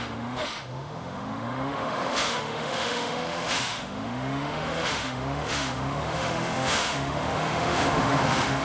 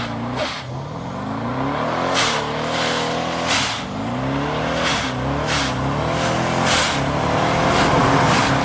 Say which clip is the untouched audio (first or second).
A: second